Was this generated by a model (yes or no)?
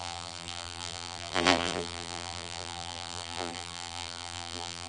yes